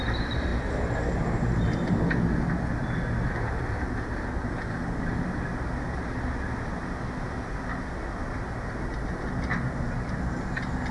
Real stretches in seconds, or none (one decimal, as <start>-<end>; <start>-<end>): 0.0-10.9